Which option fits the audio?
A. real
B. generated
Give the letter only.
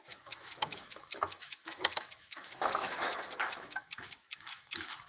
B